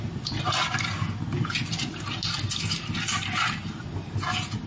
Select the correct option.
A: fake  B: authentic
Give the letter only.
B